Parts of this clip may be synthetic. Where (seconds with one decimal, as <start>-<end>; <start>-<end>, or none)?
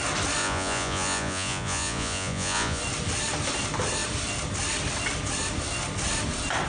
0.4-2.8